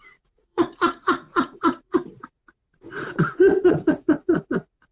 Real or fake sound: fake